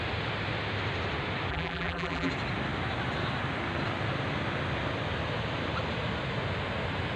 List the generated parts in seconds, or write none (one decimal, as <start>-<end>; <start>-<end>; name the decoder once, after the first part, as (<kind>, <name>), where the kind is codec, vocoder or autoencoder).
1.5-2.3 (vocoder, BigVGAN v2)